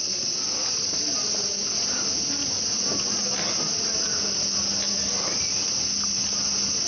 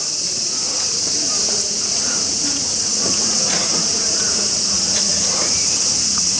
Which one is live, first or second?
first